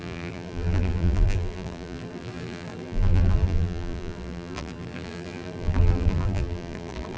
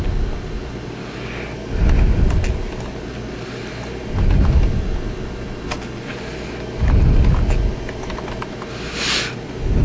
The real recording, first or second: second